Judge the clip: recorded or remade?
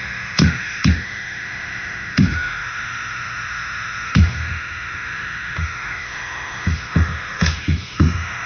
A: remade